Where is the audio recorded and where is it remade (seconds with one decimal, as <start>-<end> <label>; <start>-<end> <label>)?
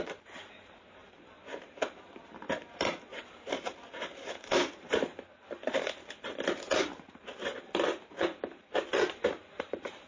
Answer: 0.0-4.7 remade; 4.7-6.0 recorded; 6.0-10.1 remade